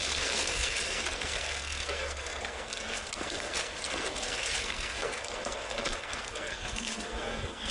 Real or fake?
fake